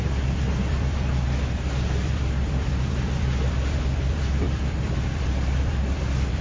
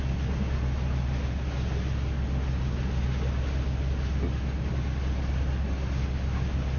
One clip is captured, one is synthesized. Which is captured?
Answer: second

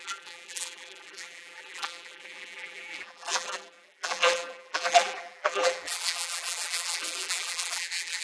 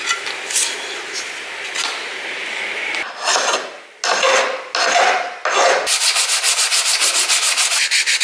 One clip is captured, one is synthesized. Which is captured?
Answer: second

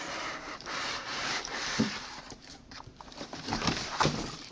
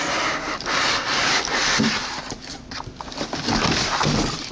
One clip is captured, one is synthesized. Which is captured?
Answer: second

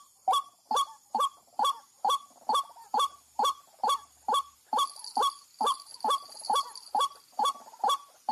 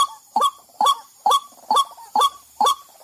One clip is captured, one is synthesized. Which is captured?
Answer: first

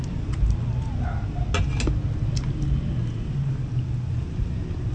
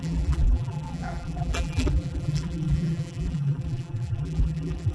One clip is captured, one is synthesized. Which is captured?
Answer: first